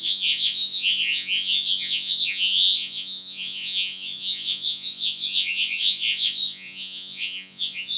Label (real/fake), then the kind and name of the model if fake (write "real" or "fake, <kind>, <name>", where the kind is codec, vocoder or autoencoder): fake, vocoder, Vocos